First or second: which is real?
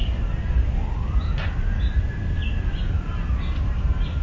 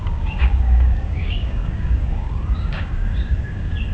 first